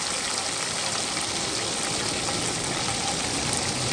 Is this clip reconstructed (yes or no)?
no